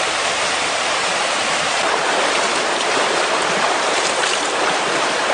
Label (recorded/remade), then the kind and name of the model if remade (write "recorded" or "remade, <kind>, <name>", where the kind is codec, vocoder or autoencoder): remade, vocoder, BigVGAN v2